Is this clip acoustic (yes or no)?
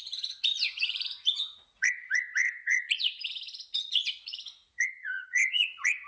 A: no